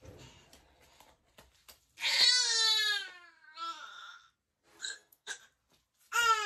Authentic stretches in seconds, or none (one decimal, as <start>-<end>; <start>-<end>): 0.0-4.8; 5.3-6.5